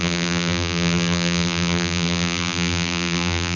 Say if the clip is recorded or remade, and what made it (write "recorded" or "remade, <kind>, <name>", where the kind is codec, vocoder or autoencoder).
remade, vocoder, BigVGAN v2